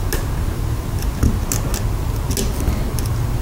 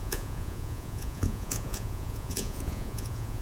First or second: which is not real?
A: second